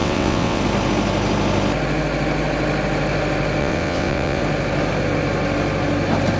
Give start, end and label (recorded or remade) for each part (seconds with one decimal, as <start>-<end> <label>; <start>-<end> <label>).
0.0-0.6 remade; 0.6-3.6 recorded; 3.6-4.4 remade; 4.4-6.4 recorded